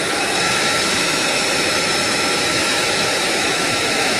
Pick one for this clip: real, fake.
fake